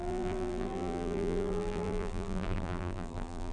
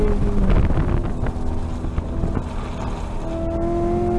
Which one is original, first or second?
second